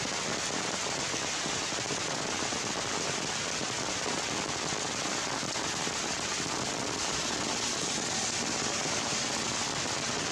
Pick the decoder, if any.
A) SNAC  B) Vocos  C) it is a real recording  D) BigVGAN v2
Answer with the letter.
C